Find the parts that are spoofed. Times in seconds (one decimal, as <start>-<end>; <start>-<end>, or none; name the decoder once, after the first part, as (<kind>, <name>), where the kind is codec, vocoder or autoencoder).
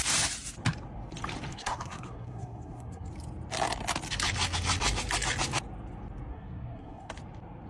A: 1.5-3.1 (codec, SNAC); 6.3-7.1